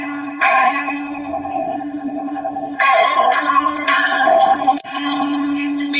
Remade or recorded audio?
remade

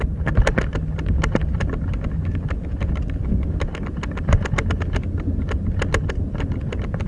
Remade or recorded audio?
recorded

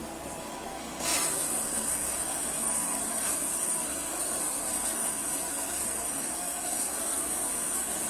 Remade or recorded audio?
remade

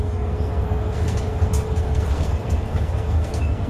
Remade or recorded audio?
remade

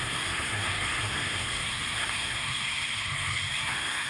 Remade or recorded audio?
remade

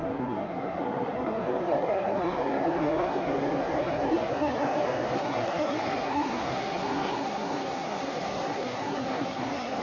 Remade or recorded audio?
remade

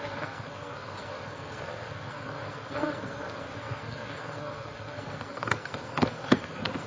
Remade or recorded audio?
remade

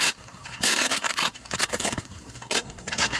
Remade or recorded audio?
remade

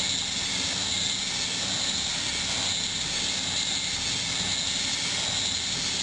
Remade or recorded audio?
recorded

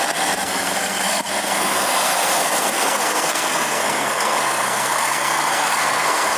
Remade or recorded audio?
remade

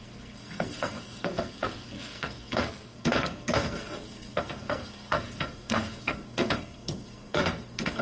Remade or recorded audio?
remade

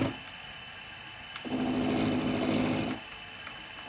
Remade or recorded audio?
recorded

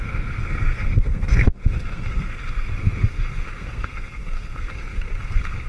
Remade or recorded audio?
remade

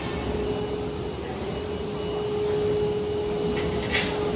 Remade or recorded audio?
recorded